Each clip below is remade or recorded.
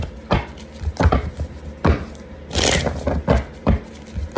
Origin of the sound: recorded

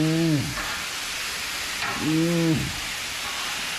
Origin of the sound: recorded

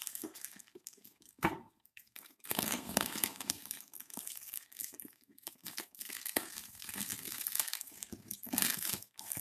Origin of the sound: remade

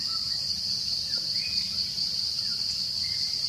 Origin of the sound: recorded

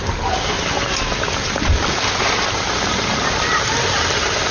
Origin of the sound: recorded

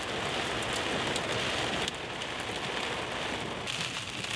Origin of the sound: recorded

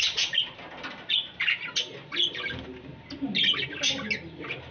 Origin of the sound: recorded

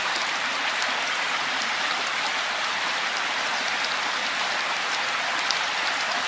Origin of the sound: recorded